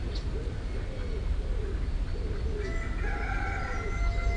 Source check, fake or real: real